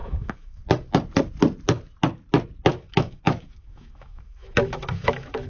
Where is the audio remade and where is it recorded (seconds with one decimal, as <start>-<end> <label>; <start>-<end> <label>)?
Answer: 0.0-0.6 remade; 0.6-2.7 recorded; 2.7-5.5 remade